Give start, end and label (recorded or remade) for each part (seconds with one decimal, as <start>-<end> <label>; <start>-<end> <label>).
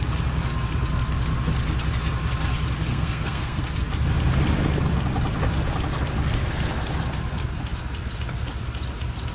0.0-2.9 recorded; 2.9-3.6 remade; 3.6-9.3 recorded